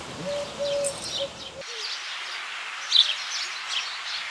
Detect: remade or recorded recorded